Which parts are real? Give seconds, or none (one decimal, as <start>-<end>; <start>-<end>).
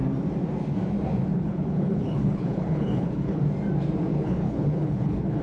0.0-1.3; 3.4-4.1